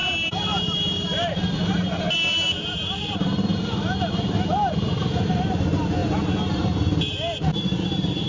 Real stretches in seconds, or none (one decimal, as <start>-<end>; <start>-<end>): 6.0-6.5